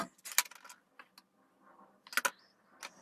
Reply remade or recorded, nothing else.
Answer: recorded